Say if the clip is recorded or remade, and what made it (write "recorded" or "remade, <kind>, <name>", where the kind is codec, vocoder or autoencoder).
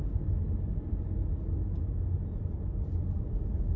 recorded